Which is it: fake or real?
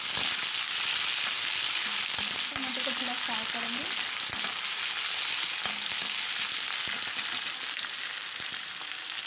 real